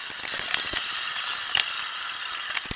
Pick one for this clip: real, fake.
real